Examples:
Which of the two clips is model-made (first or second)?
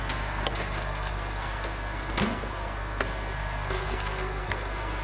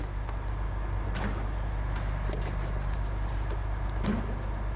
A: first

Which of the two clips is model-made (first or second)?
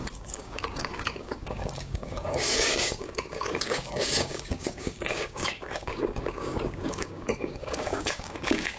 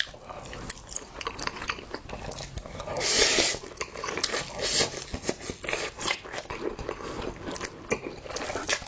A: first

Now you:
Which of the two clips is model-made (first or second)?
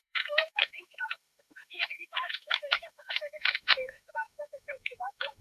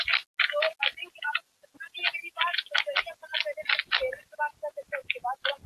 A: first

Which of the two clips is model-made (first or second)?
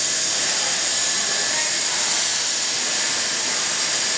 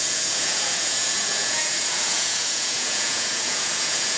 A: second